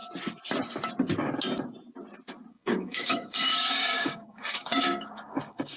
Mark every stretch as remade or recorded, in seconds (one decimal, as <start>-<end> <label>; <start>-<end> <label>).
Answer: 0.0-2.5 recorded; 2.5-5.8 remade